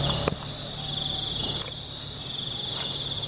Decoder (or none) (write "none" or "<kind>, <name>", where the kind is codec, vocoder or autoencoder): none